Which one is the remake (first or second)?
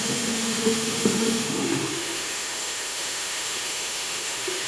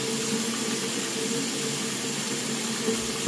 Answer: first